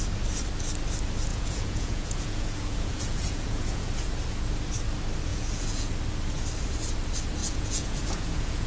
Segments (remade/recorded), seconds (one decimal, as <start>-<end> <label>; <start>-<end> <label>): 0.0-1.3 recorded; 1.3-3.9 remade; 3.9-5.3 recorded; 5.3-5.9 remade; 5.9-7.4 recorded; 7.4-8.7 remade